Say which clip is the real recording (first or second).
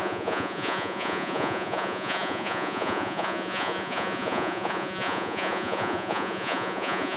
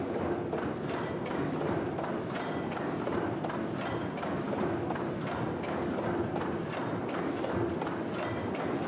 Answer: second